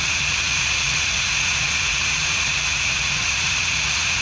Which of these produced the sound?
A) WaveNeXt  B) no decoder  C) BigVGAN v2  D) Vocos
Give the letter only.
D